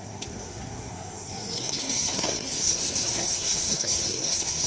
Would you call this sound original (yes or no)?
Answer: no